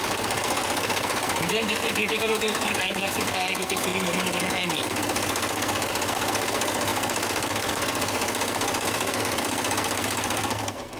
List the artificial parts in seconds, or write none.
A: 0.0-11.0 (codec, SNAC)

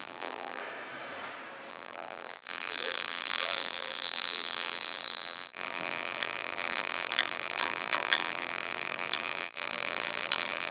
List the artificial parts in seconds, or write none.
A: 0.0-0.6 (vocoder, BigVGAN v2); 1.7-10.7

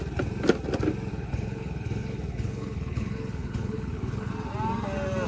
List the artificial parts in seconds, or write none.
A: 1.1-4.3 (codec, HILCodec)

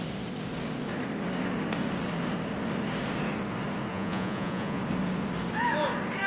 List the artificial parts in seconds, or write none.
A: 3.9-4.8 (vocoder, Vocos)